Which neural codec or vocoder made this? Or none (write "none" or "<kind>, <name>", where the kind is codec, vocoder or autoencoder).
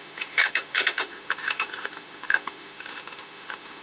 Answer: autoencoder, DAC-VAE